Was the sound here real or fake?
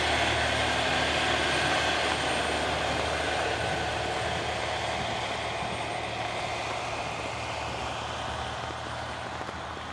real